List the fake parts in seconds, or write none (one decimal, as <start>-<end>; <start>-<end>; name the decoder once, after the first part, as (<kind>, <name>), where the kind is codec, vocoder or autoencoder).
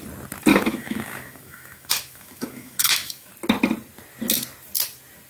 0.5-3.3 (autoencoder, DAC-VAE)